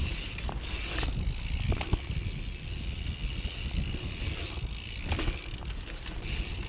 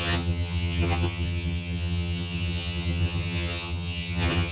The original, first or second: first